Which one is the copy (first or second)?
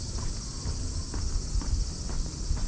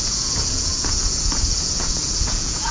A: second